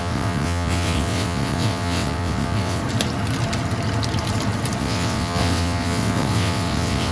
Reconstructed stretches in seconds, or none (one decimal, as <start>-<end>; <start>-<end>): 0.0-2.8; 4.8-7.1